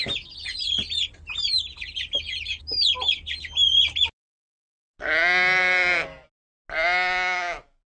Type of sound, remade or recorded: recorded